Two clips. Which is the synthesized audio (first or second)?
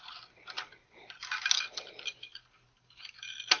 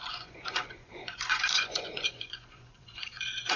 second